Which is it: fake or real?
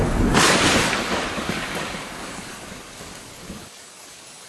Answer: fake